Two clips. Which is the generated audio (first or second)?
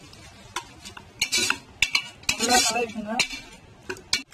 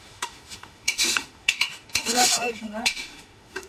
second